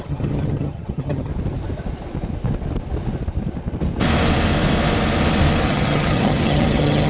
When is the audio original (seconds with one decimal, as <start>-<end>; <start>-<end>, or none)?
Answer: 1.3-5.6